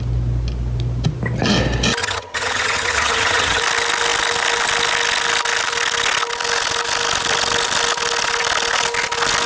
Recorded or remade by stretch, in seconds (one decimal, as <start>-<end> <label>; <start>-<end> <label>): 0.0-2.0 recorded; 2.0-3.6 remade; 3.6-9.5 recorded